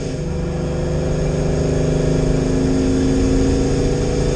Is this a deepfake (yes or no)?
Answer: no